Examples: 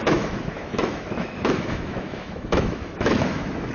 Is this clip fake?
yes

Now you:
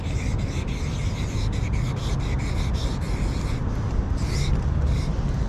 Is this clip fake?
no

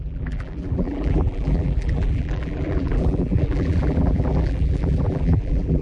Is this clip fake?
yes